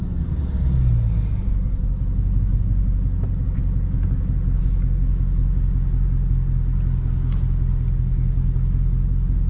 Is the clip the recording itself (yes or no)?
yes